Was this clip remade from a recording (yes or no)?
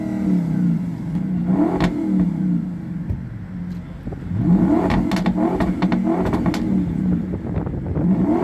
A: no